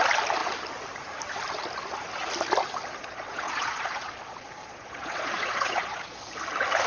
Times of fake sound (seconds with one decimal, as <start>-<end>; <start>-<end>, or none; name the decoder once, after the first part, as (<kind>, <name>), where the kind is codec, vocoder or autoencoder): 3.0-6.3 (vocoder, Vocos)

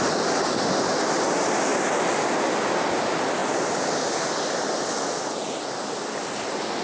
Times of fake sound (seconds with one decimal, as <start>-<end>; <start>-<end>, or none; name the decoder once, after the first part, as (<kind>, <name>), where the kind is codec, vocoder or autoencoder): none

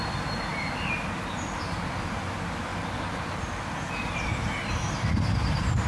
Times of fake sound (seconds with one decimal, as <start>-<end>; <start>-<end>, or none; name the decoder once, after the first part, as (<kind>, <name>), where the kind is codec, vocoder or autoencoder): none

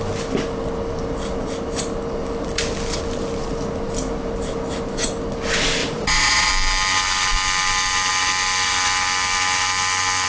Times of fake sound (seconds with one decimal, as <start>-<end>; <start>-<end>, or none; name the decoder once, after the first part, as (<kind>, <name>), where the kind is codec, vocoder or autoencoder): 5.8-6.5 (vocoder, Vocos)